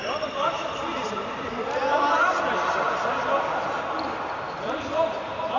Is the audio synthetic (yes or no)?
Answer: no